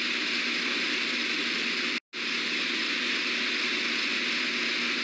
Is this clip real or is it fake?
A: real